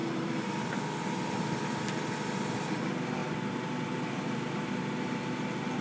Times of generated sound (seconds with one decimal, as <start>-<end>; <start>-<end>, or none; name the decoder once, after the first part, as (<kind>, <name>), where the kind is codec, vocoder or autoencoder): 0.0-2.1 (vocoder, BigVGAN v2); 3.2-4.6